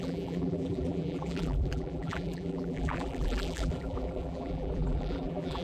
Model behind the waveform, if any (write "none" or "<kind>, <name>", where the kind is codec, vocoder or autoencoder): vocoder, BigVGAN v2